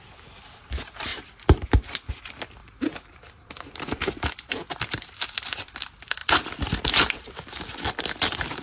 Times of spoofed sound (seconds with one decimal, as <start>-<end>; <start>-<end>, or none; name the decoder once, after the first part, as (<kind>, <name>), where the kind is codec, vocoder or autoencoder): none